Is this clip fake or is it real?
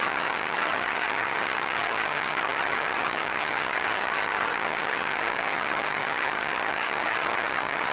fake